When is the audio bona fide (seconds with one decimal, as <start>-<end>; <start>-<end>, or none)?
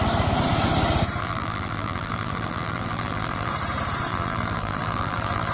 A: 0.0-1.2; 3.5-4.1